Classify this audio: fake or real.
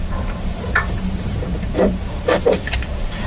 fake